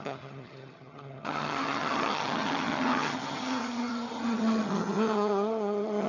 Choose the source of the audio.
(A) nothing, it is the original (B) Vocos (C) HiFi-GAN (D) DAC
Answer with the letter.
C